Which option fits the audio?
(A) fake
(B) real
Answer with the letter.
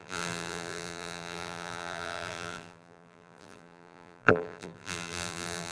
A